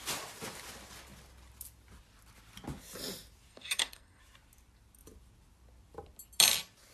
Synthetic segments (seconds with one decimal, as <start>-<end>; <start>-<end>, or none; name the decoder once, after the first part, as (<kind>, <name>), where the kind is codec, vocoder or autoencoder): 3.5-4.2 (codec, SNAC)